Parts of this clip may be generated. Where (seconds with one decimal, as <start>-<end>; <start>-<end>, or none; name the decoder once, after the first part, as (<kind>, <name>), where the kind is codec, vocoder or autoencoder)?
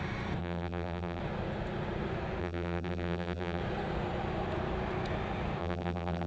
0.4-1.2 (vocoder, BigVGAN v2); 2.4-3.6; 5.6-6.3